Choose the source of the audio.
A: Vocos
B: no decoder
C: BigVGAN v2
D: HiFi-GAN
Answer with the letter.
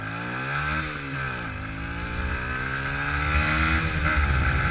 B